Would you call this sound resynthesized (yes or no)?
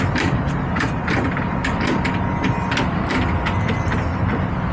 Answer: no